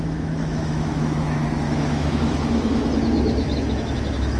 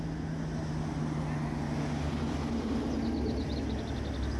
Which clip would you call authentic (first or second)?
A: second